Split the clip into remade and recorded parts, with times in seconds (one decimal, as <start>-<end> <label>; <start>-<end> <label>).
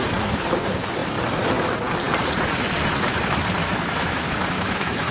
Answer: 0.0-3.6 recorded; 3.6-5.1 remade